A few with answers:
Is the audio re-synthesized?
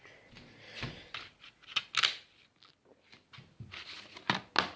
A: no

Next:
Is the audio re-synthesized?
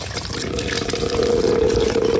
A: yes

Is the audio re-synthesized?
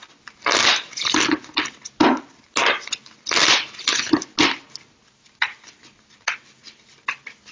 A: no